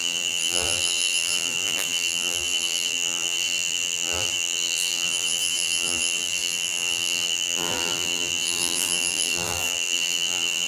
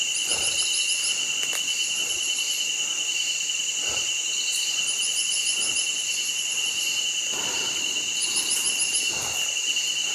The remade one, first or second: first